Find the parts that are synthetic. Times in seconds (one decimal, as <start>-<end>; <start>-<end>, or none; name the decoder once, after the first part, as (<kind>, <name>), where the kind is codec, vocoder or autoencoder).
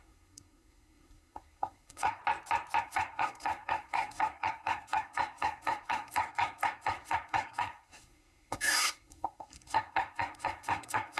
0.0-2.2 (codec, SNAC); 2.8-11.2